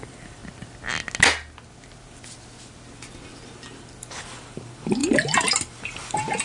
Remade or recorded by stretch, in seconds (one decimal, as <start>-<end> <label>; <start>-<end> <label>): 0.0-0.4 remade; 0.4-4.2 recorded; 4.2-6.4 remade